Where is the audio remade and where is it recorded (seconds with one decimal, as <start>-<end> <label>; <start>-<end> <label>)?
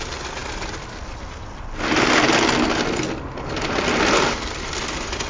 0.0-5.3 recorded